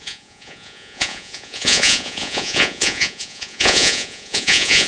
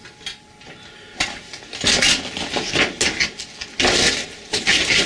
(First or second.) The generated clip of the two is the first